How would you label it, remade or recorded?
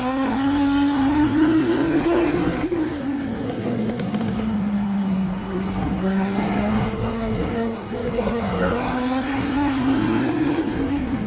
remade